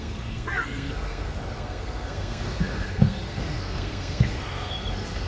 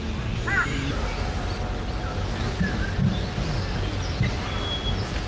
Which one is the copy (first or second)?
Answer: first